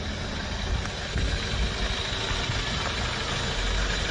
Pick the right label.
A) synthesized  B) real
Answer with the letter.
B